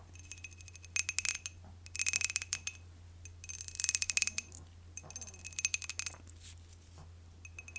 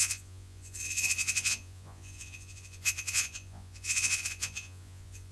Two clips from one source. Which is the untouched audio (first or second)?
first